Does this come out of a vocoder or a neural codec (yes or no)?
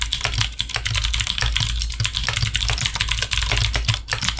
no